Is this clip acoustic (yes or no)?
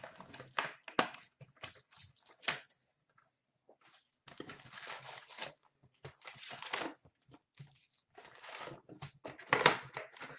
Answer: yes